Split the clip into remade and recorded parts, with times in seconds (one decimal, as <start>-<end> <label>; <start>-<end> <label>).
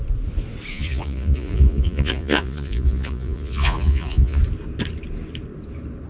0.0-0.7 recorded; 0.7-4.4 remade; 4.4-6.1 recorded